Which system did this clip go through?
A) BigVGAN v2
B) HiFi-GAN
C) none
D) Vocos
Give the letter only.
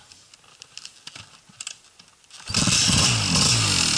C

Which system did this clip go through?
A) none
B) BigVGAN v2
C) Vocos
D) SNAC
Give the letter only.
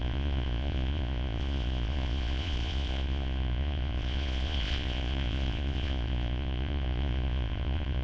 C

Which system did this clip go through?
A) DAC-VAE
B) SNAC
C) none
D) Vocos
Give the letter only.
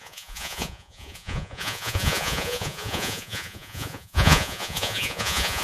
D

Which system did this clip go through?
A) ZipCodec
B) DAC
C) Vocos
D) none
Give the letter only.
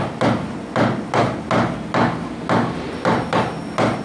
D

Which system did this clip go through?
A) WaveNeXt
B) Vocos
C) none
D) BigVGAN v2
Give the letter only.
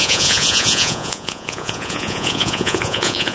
B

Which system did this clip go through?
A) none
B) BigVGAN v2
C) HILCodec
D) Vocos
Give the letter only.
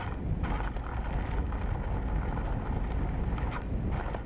A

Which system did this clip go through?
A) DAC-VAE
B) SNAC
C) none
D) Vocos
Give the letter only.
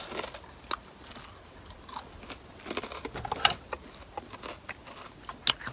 C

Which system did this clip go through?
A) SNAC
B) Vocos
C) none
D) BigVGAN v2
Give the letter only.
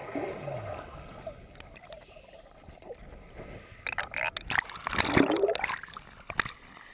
C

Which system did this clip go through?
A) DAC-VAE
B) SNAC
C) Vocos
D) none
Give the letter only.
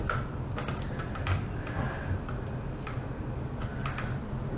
D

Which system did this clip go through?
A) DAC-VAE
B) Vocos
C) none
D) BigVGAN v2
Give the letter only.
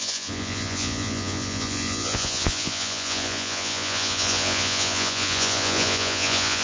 B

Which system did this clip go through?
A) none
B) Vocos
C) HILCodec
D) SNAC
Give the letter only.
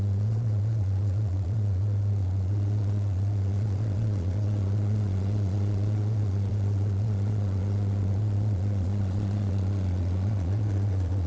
B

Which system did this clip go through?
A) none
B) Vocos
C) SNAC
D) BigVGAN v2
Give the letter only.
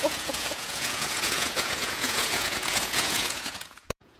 B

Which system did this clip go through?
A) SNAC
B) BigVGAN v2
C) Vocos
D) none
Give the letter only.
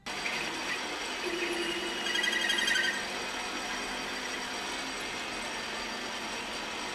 D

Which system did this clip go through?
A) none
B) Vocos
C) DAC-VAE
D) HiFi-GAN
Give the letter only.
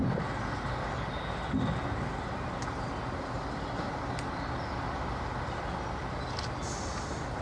A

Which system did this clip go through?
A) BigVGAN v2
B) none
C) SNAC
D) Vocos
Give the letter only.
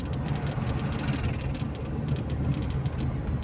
B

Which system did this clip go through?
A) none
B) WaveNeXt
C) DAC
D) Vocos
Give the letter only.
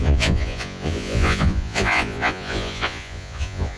D